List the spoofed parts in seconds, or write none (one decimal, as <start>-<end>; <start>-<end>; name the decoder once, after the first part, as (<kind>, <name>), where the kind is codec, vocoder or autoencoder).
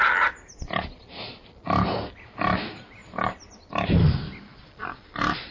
none